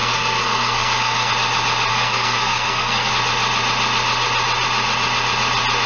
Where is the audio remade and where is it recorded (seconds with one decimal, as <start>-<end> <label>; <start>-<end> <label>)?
0.0-1.3 remade; 1.3-1.9 recorded; 1.9-3.1 remade; 3.1-5.9 recorded